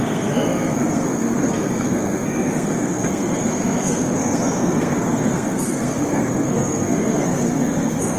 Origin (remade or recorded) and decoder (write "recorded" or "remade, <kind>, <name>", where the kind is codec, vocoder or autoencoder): remade, codec, SNAC